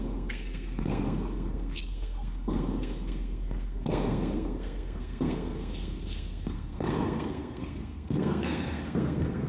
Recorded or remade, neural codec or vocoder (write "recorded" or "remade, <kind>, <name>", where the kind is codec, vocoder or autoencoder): remade, codec, SNAC